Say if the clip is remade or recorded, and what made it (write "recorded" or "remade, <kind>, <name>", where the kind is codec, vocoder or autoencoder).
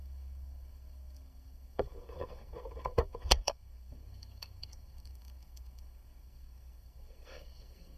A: remade, codec, SNAC